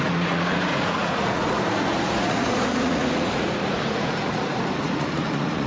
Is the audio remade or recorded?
remade